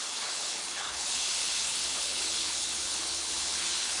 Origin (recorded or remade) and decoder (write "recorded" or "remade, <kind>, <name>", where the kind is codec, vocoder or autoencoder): remade, codec, HILCodec